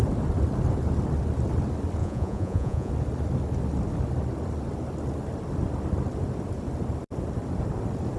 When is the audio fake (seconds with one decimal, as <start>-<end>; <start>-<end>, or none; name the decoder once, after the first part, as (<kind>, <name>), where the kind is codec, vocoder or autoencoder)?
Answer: 2.0-2.9 (vocoder, Vocos)